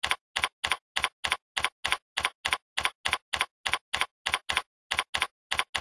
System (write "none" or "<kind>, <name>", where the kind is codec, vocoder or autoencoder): none